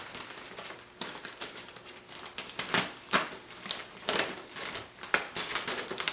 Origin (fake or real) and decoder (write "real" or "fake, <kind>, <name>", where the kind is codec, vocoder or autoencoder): real